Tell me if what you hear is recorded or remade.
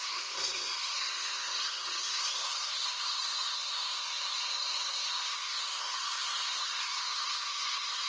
remade